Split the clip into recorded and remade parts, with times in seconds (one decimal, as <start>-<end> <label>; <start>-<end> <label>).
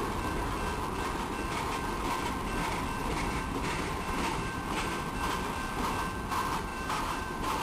0.0-3.0 recorded; 3.0-4.9 remade; 4.9-6.7 recorded; 6.7-7.6 remade